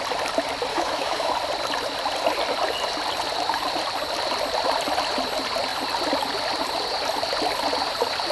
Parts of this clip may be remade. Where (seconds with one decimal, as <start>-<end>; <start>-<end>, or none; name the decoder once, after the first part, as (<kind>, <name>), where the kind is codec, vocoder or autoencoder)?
0.7-1.3 (autoencoder, DAC-VAE)